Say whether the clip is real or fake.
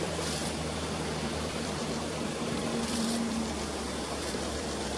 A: fake